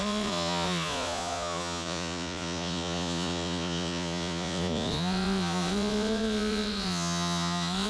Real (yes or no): no